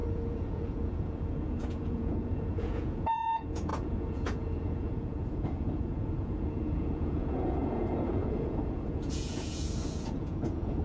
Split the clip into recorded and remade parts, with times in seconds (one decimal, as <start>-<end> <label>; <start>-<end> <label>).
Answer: 0.0-10.8 remade

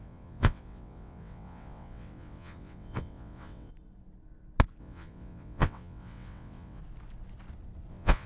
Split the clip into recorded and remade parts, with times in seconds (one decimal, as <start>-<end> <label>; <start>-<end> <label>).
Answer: 0.0-3.7 remade; 3.7-4.8 recorded; 4.8-6.8 remade; 6.8-7.9 recorded; 7.9-8.3 remade

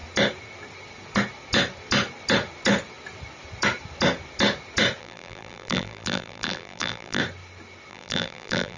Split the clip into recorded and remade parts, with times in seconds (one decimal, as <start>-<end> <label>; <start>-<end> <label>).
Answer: 0.0-5.0 recorded; 5.0-7.2 remade; 7.2-7.9 recorded; 7.9-8.8 remade

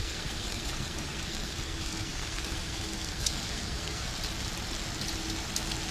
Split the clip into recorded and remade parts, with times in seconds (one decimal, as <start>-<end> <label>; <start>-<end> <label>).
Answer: 0.0-4.1 remade; 4.1-5.9 recorded

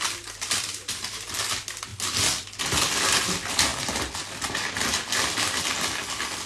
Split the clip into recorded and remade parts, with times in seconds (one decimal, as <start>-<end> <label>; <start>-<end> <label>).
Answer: 0.0-6.5 recorded